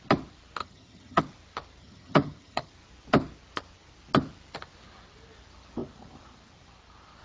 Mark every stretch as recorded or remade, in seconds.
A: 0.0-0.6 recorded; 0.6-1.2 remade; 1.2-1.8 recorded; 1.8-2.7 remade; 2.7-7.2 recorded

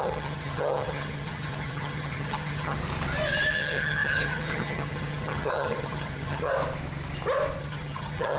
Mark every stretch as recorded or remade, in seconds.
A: 0.0-2.8 remade; 2.8-3.5 recorded; 3.5-6.5 remade; 6.5-7.6 recorded; 7.6-8.4 remade

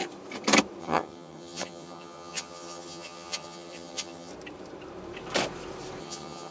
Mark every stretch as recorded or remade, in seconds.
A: 0.0-0.8 recorded; 0.8-4.3 remade; 4.3-6.0 recorded; 6.0-6.5 remade